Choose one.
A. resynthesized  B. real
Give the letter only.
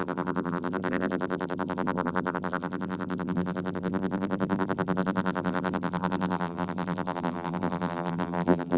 A